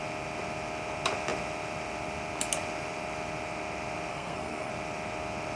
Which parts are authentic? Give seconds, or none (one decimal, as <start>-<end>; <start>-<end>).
0.0-4.1; 4.7-5.6

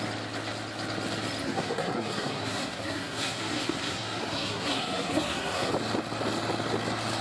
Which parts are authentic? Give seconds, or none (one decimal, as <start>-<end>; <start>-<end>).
0.0-1.4; 5.7-7.2

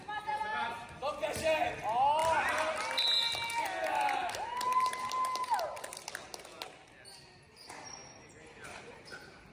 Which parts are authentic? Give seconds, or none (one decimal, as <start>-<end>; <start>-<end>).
0.0-9.5

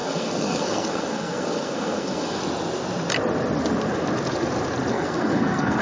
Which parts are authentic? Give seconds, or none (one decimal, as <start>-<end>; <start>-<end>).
2.4-4.9

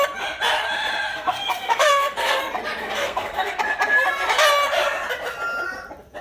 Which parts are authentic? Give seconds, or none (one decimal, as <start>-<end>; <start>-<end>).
0.0-1.1; 2.4-2.8; 3.6-6.2

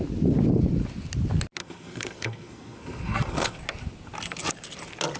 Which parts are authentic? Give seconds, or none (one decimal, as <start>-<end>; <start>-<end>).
0.0-1.6; 3.6-5.2

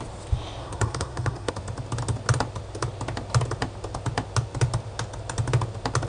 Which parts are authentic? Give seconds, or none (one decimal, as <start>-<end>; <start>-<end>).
0.0-0.6; 1.5-6.1

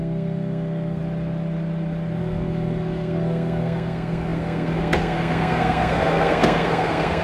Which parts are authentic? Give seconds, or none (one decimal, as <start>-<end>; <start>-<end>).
1.0-2.2